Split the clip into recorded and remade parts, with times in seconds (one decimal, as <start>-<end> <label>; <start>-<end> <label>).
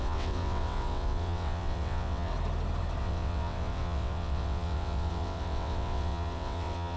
0.0-2.3 remade; 2.3-3.0 recorded; 3.0-7.0 remade